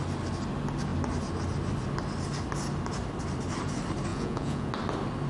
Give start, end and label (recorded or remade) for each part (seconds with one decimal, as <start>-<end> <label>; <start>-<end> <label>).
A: 0.0-4.1 recorded; 4.1-4.7 remade; 4.7-5.3 recorded